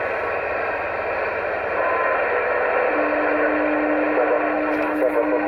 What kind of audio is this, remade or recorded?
recorded